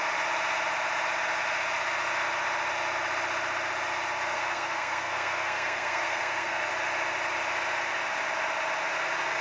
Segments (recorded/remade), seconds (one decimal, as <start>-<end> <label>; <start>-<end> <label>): 0.0-4.3 recorded; 4.3-6.7 remade; 6.7-9.4 recorded

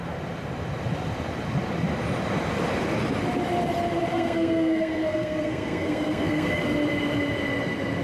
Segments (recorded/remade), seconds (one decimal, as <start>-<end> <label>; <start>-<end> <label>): 0.0-4.1 recorded; 4.1-6.6 remade; 6.6-8.0 recorded

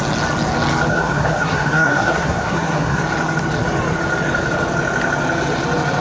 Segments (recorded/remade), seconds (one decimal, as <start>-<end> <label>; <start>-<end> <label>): 0.0-0.9 recorded; 0.9-3.0 remade; 3.0-6.0 recorded

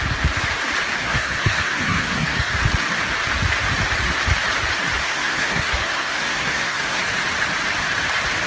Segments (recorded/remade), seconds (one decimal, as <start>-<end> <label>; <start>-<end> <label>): 0.0-1.0 recorded; 1.0-2.6 remade; 2.6-5.0 recorded; 5.0-7.0 remade; 7.0-8.5 recorded

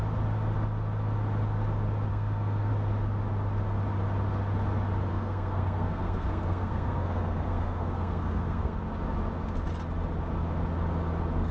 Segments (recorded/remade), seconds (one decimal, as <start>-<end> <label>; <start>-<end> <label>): 0.0-2.1 recorded; 2.1-2.7 remade; 2.7-5.1 recorded; 5.1-8.8 remade; 8.8-11.5 recorded

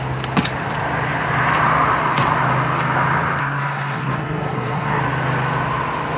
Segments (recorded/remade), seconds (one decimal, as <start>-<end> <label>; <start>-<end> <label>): 0.0-3.4 recorded; 3.4-5.0 remade; 5.0-6.2 recorded